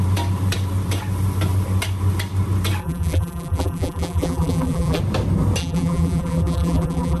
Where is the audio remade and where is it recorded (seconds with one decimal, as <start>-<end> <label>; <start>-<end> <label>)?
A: 0.0-2.8 recorded; 2.8-5.0 remade; 5.0-5.6 recorded; 5.6-7.2 remade